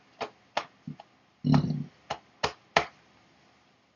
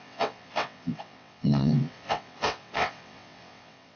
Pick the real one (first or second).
first